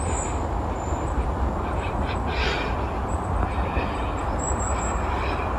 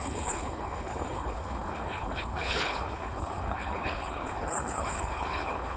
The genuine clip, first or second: first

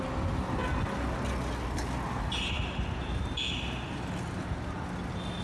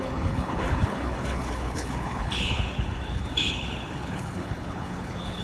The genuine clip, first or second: first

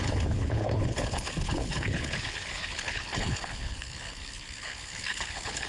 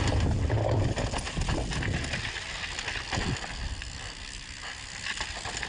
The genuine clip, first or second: second